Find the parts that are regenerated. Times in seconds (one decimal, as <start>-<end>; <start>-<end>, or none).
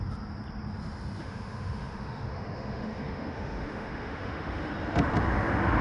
1.2-4.7